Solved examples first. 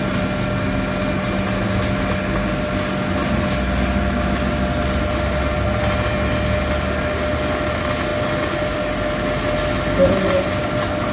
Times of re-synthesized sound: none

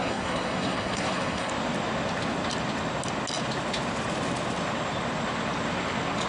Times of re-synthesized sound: 0.0-1.5 (codec, SNAC)